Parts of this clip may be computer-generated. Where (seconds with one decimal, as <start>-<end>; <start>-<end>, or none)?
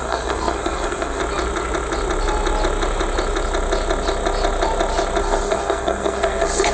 0.0-1.2; 5.2-6.7